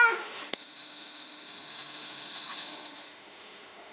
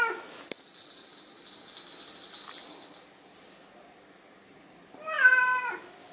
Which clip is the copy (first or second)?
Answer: first